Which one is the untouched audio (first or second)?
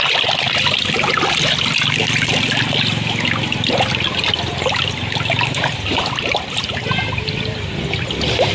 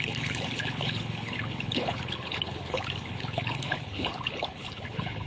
first